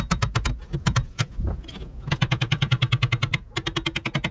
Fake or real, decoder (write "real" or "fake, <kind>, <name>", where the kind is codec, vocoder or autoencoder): real